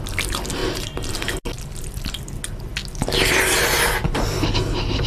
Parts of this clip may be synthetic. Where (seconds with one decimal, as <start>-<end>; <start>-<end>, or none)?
none